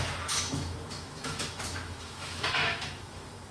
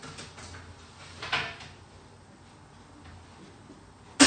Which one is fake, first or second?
first